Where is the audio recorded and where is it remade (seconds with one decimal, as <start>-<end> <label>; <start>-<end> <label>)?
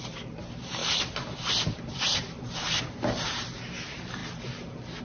0.0-0.8 remade; 0.8-1.7 recorded; 1.7-4.2 remade; 4.2-5.0 recorded